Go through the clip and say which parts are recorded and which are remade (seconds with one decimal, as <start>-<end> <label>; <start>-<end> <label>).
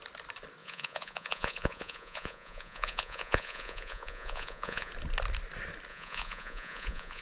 0.0-0.6 recorded; 0.6-4.9 remade; 4.9-5.9 recorded; 5.9-7.2 remade